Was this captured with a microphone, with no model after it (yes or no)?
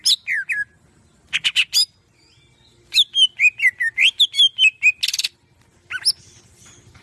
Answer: yes